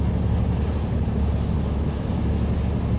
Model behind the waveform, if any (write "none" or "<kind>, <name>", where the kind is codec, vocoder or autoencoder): none